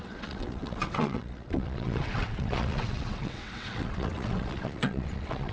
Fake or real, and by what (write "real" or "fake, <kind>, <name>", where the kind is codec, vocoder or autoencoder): fake, vocoder, WaveNeXt